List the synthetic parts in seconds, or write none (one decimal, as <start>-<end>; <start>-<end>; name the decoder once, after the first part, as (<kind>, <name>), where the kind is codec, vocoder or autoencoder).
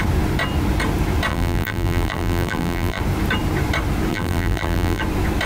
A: 1.3-3.0 (vocoder, BigVGAN v2); 4.1-5.0